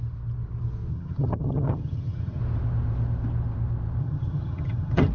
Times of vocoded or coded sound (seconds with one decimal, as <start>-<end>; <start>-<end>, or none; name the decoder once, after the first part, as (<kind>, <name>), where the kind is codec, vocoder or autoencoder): 0.9-2.4 (vocoder, HiFi-GAN); 4.0-5.1